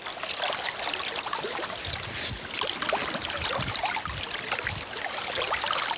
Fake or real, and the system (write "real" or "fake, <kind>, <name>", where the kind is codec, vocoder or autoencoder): real